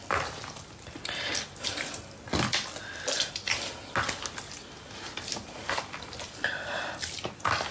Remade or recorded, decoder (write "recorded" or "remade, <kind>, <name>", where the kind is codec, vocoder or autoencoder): recorded